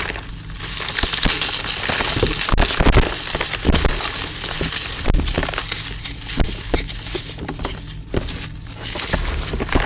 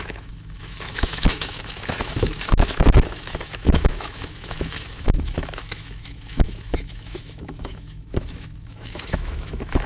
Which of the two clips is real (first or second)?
first